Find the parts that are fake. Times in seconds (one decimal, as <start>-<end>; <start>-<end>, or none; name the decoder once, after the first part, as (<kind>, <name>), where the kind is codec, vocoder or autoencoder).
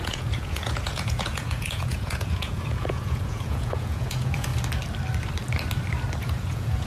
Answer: 0.0-4.5 (vocoder, Vocos); 6.2-6.9